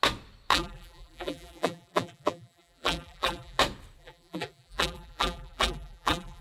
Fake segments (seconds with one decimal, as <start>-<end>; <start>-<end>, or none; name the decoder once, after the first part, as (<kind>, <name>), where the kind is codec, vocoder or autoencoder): 0.5-3.6 (vocoder, BigVGAN v2); 4.0-6.4